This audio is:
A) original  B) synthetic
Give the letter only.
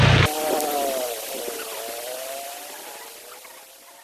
A